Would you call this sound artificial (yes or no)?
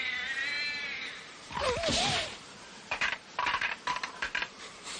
yes